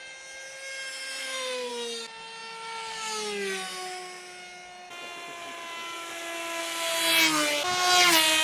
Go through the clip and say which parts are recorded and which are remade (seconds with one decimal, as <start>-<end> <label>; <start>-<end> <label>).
0.0-1.2 recorded; 1.2-1.7 remade; 1.7-8.4 recorded